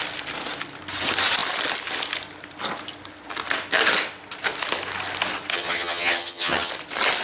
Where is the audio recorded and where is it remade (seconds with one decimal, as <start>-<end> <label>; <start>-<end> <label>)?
0.0-5.5 recorded; 5.5-6.7 remade; 6.7-7.2 recorded